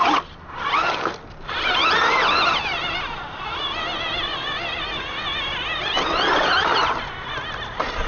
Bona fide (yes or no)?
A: yes